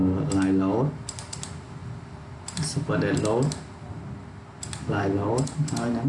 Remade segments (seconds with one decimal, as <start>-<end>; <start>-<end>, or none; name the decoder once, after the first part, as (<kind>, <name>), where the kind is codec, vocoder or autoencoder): 0.9-1.8 (vocoder, BigVGAN v2); 4.6-6.1